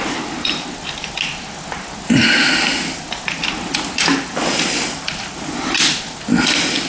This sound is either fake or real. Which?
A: real